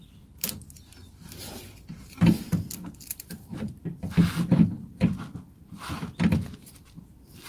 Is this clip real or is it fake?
real